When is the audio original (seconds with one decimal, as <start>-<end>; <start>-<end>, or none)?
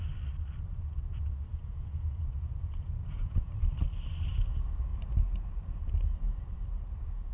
0.0-1.5; 3.5-7.3